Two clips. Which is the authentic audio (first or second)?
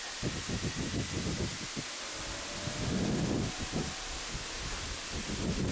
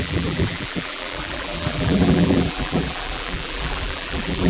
first